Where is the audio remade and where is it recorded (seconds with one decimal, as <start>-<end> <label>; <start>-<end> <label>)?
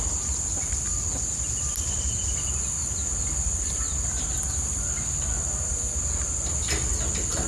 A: 0.0-7.5 recorded